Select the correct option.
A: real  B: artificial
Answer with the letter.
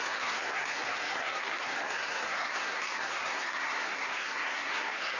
B